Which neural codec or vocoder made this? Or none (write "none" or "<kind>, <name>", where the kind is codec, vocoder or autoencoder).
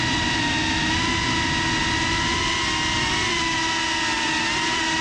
none